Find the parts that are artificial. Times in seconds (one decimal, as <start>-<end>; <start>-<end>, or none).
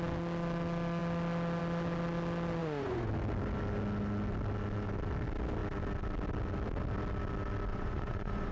2.6-3.1; 7.7-8.5